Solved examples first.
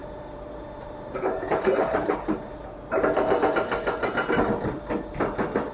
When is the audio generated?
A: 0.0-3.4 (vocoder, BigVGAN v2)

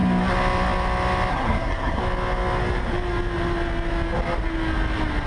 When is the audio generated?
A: 1.3-2.0 (codec, SNAC)

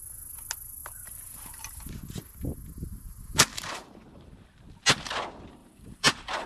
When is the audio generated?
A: 0.8-1.8 (vocoder, BigVGAN v2); 3.5-4.6; 5.6-6.5

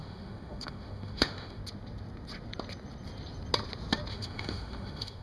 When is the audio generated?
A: 0.0-1.6 (autoencoder, DAC-VAE); 4.1-5.2

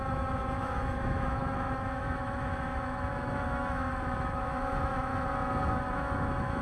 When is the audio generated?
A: 0.0-5.1 (autoencoder, DAC-VAE); 5.8-6.6

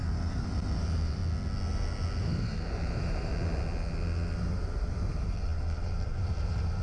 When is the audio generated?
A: 0.0-1.2 (vocoder, BigVGAN v2); 2.2-3.3; 4.4-6.8

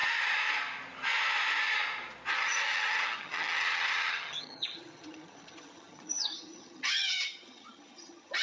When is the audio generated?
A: 2.3-8.4 (vocoder, HiFi-GAN)

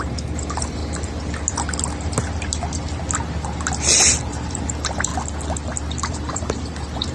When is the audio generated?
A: 0.0-0.8 (vocoder, BigVGAN v2); 4.2-5.1; 5.9-7.1